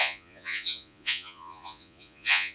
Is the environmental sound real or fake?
fake